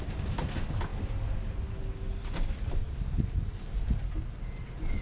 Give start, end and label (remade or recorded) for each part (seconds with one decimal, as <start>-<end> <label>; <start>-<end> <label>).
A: 0.0-5.0 recorded